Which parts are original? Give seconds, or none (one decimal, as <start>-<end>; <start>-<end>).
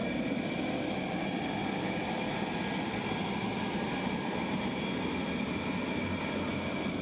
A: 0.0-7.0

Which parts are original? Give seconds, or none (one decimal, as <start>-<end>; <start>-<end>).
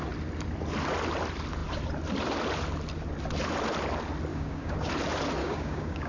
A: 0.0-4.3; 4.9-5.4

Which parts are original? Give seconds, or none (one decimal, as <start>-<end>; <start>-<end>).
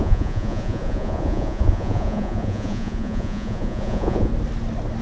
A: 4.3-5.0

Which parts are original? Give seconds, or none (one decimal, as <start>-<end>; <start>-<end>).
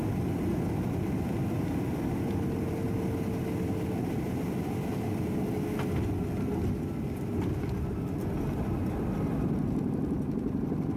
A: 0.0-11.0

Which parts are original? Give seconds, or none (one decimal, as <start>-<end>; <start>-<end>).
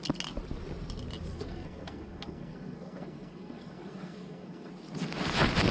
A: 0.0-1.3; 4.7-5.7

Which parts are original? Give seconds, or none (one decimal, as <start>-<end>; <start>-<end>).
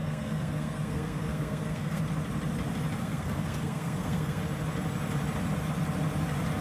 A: 2.0-3.0; 4.4-6.6